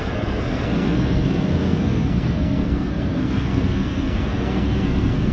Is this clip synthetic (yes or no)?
yes